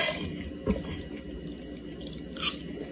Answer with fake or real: real